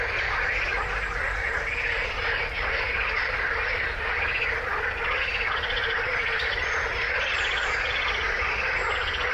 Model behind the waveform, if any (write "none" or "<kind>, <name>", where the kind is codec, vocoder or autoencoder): none